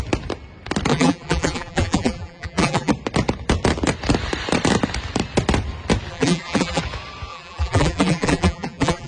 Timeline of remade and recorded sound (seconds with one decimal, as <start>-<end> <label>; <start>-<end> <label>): 0.0-0.9 recorded; 0.9-2.9 remade; 2.9-6.1 recorded; 6.1-6.8 remade; 6.8-7.3 recorded; 7.3-9.1 remade